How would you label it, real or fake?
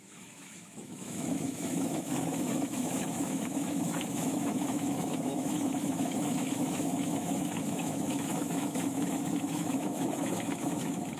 fake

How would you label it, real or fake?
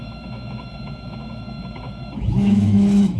fake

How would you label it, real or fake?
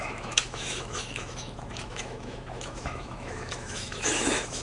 fake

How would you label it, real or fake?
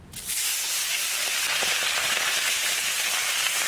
real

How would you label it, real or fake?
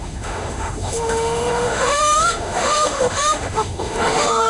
fake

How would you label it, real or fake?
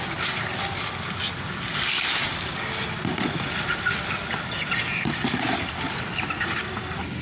real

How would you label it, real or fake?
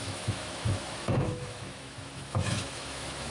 fake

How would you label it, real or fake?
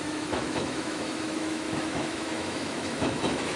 fake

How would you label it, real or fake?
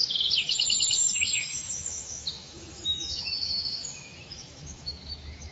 fake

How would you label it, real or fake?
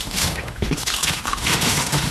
fake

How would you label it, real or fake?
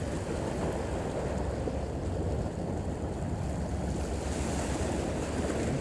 real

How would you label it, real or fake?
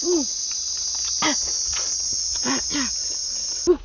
real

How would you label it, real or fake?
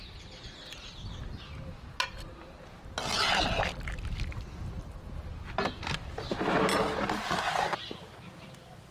real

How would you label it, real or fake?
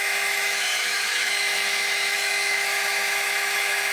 fake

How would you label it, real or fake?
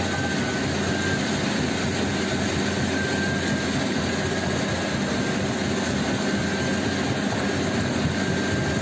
real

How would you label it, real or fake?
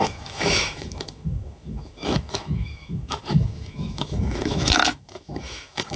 fake